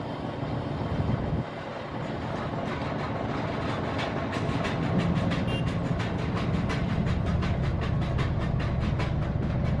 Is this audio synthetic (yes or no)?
no